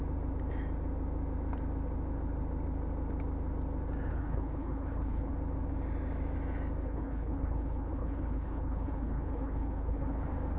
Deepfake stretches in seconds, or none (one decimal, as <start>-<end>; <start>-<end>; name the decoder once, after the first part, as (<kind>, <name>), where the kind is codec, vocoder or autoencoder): 4.1-5.3 (codec, HILCodec); 6.8-10.2